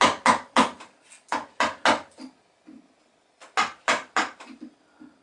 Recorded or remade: recorded